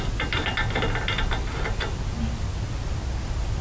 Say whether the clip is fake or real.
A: real